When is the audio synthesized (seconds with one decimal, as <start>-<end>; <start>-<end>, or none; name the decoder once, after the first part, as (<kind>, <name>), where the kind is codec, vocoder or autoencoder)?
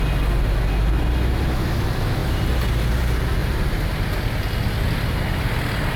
none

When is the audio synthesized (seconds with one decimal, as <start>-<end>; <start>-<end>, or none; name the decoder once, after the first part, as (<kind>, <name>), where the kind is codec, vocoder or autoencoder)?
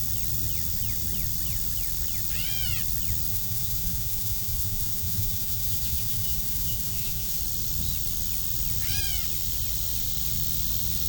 3.3-7.4 (vocoder, Vocos)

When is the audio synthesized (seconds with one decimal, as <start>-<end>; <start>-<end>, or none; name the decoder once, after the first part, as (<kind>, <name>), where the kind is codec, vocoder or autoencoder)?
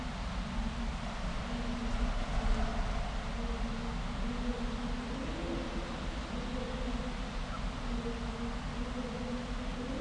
none